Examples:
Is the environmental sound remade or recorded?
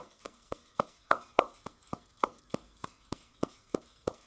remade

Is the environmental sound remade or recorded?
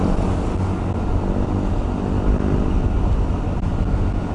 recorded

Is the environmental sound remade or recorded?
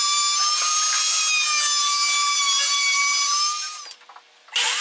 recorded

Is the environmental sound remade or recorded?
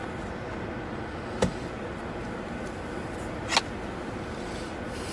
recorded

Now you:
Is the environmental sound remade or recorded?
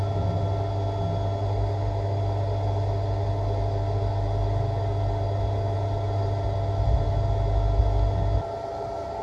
recorded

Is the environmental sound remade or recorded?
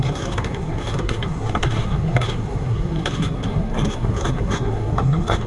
remade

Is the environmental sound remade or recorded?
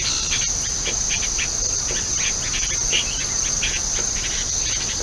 recorded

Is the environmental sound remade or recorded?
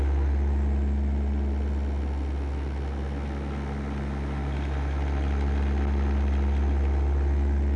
recorded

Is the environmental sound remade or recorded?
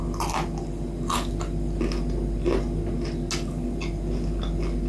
recorded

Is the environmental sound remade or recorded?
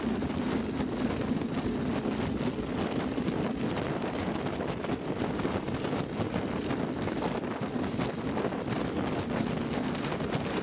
recorded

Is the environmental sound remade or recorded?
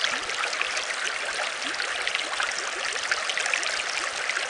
recorded